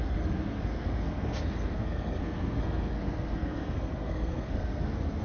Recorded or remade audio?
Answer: remade